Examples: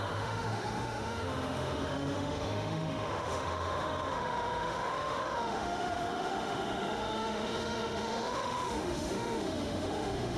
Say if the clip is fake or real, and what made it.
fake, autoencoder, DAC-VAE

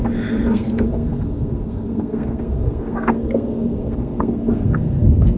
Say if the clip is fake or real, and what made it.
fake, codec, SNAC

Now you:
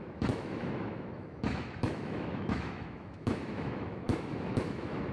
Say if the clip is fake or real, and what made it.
fake, autoencoder, DAC-VAE